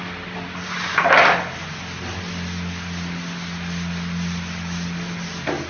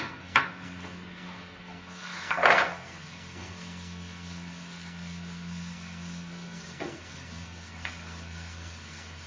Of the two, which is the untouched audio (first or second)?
first